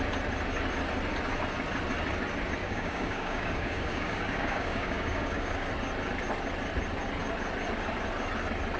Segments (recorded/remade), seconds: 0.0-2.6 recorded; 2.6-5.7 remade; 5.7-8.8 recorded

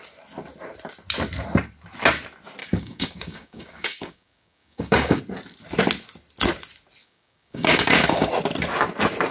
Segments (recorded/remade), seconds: 0.0-2.6 recorded; 2.6-5.2 remade; 5.2-7.0 recorded; 7.0-8.3 remade; 8.3-9.3 recorded

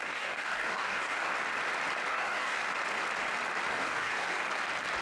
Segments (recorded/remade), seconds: 0.0-1.3 remade; 1.3-2.1 recorded; 2.1-2.7 remade; 2.7-3.7 recorded; 3.7-4.4 remade; 4.4-5.0 recorded